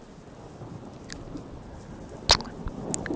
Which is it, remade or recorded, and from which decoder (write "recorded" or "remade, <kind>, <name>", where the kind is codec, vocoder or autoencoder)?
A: recorded